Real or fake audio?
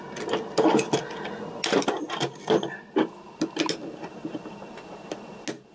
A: real